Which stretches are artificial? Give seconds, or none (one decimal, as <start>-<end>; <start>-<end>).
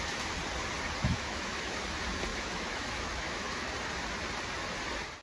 1.0-1.8; 2.3-3.7